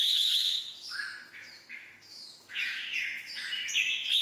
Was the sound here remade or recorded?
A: remade